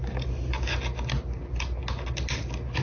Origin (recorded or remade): recorded